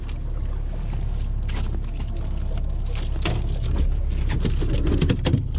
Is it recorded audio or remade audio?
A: recorded